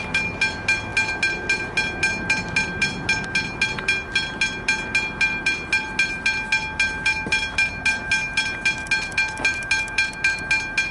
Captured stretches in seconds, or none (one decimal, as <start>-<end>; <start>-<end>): 0.0-10.9